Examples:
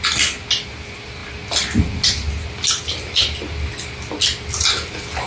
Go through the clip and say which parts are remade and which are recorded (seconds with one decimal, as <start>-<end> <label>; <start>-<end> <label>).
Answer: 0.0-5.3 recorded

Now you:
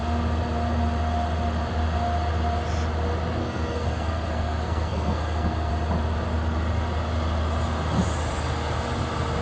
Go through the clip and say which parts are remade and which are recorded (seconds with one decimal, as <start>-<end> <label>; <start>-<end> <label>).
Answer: 0.0-3.4 recorded; 3.4-5.7 remade; 5.7-9.4 recorded

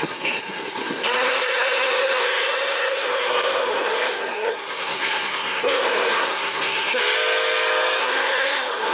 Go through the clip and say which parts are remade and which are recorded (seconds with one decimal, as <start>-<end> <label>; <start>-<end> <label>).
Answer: 0.0-7.0 remade; 7.0-8.0 recorded; 8.0-8.9 remade

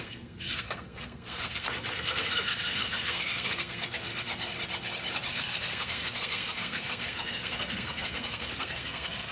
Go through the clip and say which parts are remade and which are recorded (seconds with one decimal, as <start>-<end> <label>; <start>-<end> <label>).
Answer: 0.0-4.1 remade; 4.1-5.3 recorded; 5.3-9.3 remade

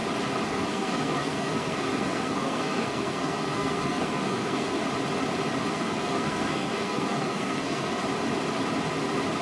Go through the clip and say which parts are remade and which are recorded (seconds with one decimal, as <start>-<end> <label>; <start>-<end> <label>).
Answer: 0.0-0.5 recorded; 0.5-4.8 remade; 4.8-5.7 recorded; 5.7-8.0 remade; 8.0-9.4 recorded